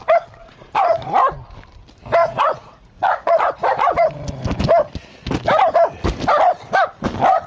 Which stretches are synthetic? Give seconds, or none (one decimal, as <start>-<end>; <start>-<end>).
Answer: 0.4-1.1; 2.2-4.1